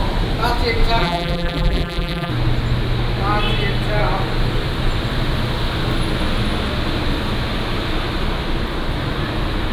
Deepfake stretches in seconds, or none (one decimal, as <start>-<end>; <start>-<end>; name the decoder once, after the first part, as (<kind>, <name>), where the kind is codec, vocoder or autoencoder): 1.0-2.3 (vocoder, BigVGAN v2)